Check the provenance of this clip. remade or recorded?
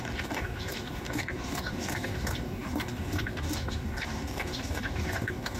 remade